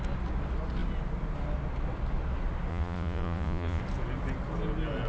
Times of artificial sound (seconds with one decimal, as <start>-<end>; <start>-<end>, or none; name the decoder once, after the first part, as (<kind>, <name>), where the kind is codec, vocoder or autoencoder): 2.7-3.8 (vocoder, Vocos)